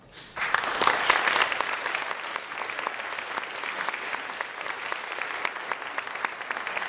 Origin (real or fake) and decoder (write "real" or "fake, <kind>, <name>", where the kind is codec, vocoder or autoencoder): real